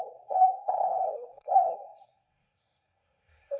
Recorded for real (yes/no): no